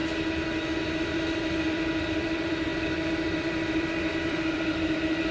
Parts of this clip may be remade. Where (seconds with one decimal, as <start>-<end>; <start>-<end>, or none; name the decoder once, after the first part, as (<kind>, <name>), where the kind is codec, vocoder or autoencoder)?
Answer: 0.8-5.3 (vocoder, BigVGAN v2)